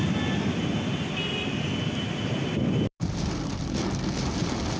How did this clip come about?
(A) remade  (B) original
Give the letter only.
B